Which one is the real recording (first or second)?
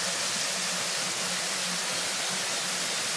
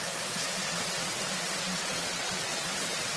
first